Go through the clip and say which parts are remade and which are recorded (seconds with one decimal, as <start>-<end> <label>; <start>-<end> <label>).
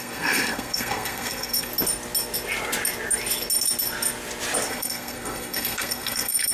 0.0-1.7 remade; 1.7-4.7 recorded; 4.7-6.5 remade